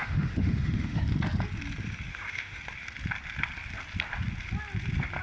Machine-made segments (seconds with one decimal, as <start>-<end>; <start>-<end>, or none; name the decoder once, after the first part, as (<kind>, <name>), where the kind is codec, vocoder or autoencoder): 0.0-1.0 (autoencoder, DAC-VAE); 2.1-2.6